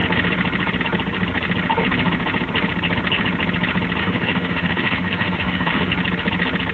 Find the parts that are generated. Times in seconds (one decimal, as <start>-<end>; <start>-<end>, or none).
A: 4.0-5.9